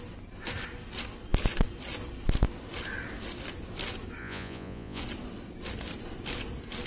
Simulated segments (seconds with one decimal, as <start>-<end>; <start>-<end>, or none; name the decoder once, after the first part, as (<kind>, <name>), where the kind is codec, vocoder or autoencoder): 4.2-5.0 (vocoder, Vocos)